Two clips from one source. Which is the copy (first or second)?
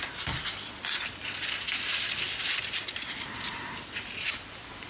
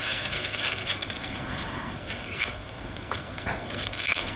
second